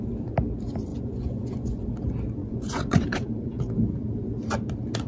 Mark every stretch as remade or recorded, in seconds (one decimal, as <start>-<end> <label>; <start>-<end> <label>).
0.0-0.9 recorded; 0.9-1.8 remade; 1.8-2.4 recorded; 2.4-3.6 remade; 3.6-5.1 recorded